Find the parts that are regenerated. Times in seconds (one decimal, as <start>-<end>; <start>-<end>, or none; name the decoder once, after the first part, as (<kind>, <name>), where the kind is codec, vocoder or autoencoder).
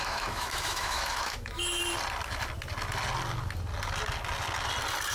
0.0-1.8 (autoencoder, DAC-VAE)